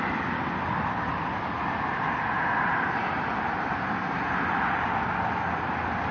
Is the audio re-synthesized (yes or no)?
no